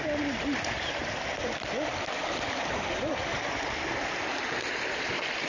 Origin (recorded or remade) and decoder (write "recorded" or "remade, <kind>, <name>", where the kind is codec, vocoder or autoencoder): recorded